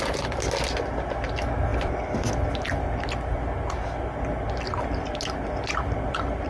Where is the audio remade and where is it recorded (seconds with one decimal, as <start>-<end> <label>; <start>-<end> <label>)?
0.0-6.5 recorded